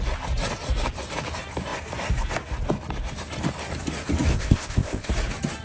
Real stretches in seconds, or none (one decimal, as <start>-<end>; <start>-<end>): 0.0-4.3; 5.1-5.6